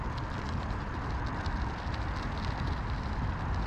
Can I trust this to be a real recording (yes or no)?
yes